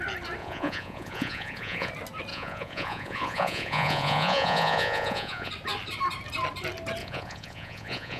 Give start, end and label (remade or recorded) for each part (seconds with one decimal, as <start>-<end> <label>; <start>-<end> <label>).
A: 0.0-0.4 recorded; 0.4-1.9 remade; 1.9-2.3 recorded; 2.3-5.5 remade; 5.5-7.0 recorded; 7.0-8.2 remade

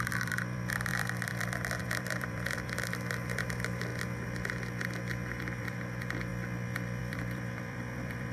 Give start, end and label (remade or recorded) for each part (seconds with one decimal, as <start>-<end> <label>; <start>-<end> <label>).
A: 0.0-3.9 remade; 3.9-5.6 recorded; 5.6-6.3 remade; 6.3-7.0 recorded; 7.0-8.3 remade

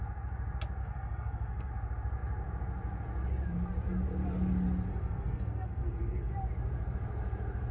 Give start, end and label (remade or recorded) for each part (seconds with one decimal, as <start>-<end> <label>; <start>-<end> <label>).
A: 0.0-0.8 recorded; 0.8-1.7 remade; 1.7-4.9 recorded; 4.9-6.3 remade; 6.3-7.7 recorded